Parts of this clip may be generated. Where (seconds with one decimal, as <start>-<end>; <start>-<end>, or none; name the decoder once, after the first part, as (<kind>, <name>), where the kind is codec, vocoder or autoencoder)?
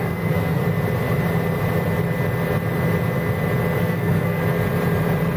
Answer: 0.0-0.6 (codec, SNAC); 3.8-4.4